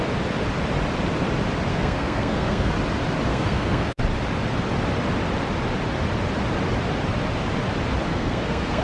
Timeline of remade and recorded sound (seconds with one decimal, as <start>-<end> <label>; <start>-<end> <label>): 0.0-1.7 recorded; 1.7-2.7 remade; 2.7-3.3 recorded; 3.3-4.0 remade; 4.0-8.1 recorded; 8.1-8.8 remade